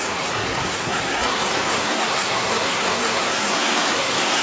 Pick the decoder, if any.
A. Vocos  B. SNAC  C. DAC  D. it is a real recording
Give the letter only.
B